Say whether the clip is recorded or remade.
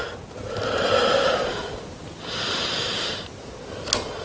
recorded